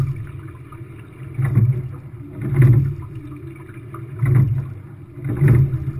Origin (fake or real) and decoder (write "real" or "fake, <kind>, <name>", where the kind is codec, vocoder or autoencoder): real